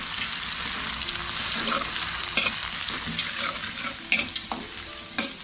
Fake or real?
real